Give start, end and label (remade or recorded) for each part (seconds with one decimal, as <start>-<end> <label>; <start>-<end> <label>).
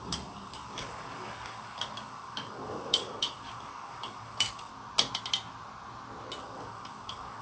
0.0-4.7 remade; 4.7-6.4 recorded; 6.4-7.4 remade